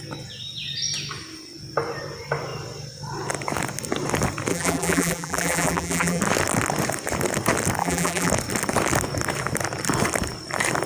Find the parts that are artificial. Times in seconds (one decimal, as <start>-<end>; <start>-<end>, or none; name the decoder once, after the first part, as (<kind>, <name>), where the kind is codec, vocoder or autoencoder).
4.5-6.2 (vocoder, BigVGAN v2); 7.8-8.3